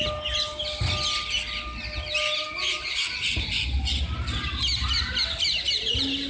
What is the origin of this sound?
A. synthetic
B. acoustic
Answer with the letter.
B